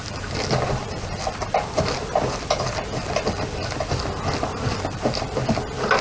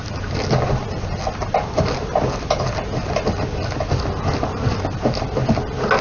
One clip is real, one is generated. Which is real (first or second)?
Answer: second